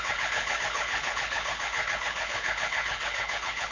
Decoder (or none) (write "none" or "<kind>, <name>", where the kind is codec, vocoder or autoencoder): codec, HILCodec